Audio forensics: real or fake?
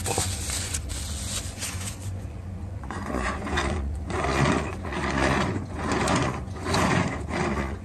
fake